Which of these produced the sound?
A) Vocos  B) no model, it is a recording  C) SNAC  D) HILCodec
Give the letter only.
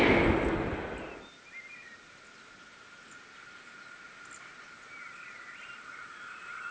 B